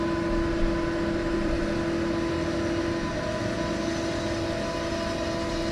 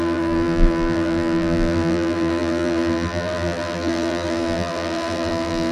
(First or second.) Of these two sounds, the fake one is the second